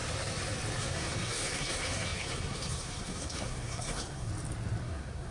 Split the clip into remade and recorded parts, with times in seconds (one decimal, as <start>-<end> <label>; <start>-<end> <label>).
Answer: 0.0-0.8 recorded; 0.8-4.3 remade; 4.3-4.8 recorded; 4.8-5.3 remade